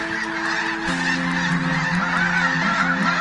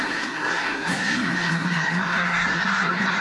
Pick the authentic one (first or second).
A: first